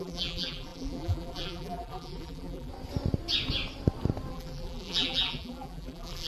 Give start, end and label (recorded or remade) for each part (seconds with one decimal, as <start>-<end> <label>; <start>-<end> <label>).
0.0-2.7 remade; 2.7-4.3 recorded; 4.3-6.3 remade

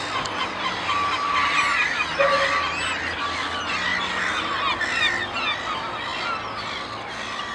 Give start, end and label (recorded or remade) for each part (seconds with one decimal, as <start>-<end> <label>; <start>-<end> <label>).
0.0-7.5 recorded

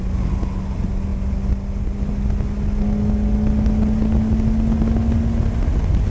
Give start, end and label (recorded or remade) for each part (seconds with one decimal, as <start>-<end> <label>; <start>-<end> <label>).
0.0-6.1 recorded

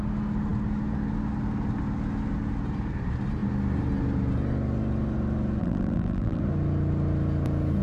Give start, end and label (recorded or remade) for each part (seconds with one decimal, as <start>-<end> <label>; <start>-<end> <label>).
0.0-5.6 recorded; 5.6-6.4 remade; 6.4-7.8 recorded